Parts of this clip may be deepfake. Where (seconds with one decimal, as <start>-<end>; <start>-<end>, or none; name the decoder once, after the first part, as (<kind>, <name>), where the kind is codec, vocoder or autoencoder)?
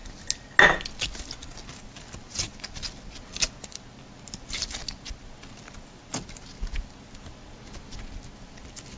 none